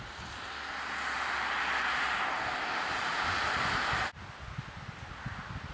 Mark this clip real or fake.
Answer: real